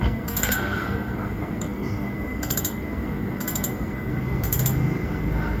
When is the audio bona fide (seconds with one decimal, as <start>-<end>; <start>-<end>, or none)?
none